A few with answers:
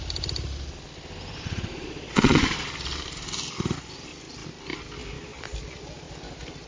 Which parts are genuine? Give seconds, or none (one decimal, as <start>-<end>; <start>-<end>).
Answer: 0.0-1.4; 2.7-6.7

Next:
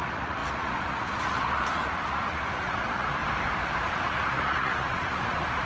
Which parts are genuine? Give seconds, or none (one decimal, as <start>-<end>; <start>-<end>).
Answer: 3.2-3.9

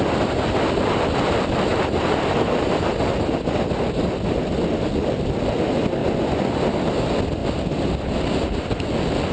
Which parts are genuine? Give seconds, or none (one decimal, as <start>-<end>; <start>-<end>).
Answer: 0.0-6.0; 6.6-9.3

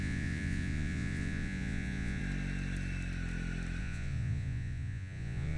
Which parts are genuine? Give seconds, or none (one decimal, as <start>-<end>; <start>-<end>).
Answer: 2.2-3.8

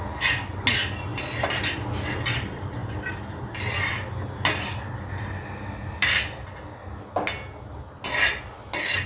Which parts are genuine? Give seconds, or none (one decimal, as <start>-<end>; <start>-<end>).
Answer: 0.0-9.1

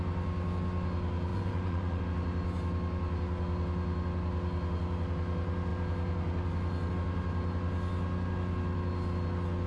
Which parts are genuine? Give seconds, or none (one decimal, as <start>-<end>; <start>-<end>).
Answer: 0.0-1.3; 2.0-9.7

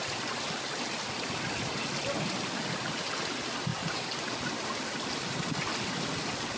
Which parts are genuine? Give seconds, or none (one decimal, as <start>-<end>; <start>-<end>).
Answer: 0.0-6.6